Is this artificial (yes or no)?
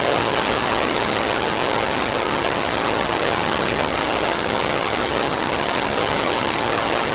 yes